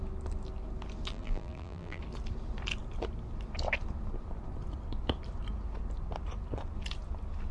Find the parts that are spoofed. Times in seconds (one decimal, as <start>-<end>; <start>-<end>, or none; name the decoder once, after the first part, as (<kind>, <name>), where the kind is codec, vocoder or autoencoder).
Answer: 1.1-2.0 (vocoder, BigVGAN v2)